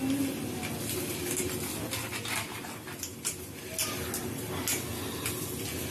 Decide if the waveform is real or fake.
real